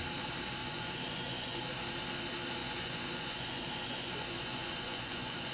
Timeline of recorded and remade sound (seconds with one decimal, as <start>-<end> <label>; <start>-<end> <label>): 0.0-0.6 recorded; 0.6-1.6 remade; 1.6-2.6 recorded; 2.6-5.5 remade